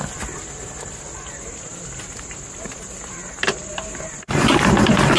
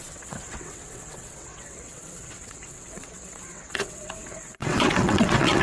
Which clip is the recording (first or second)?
first